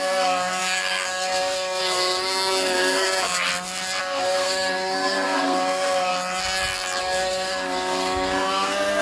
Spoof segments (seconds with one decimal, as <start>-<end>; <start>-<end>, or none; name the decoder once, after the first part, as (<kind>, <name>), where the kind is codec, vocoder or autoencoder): 0.0-3.5 (codec, SNAC); 4.0-6.1; 7.0-9.0

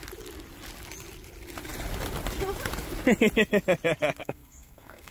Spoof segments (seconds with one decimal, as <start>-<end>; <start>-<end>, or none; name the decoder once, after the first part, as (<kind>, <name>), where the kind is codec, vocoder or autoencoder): 4.2-5.1 (codec, SNAC)

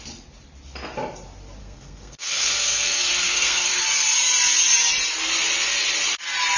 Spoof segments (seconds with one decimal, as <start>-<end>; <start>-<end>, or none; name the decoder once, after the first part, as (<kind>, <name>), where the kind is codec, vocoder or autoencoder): 1.6-3.8 (codec, SNAC)

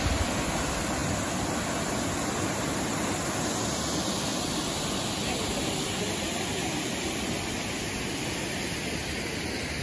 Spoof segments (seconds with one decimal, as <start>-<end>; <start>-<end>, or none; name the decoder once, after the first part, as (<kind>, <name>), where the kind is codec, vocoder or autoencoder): none